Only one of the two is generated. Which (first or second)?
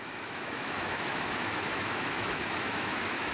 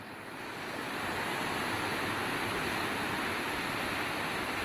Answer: first